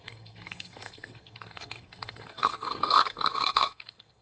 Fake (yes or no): yes